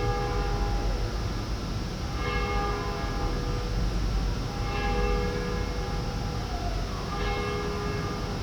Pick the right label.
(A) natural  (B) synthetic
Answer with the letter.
A